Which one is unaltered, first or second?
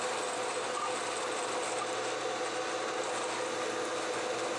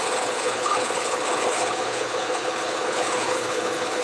first